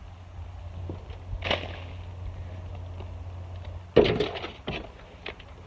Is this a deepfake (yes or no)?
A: no